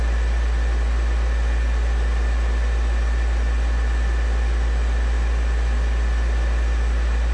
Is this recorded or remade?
recorded